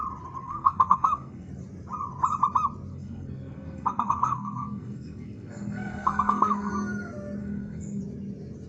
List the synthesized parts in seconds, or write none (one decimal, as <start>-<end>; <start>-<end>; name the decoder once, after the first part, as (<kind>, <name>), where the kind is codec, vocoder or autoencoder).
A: 0.4-1.5 (codec, SNAC); 2.9-6.7; 7.4-8.0